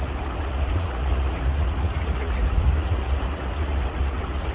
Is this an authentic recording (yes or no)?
no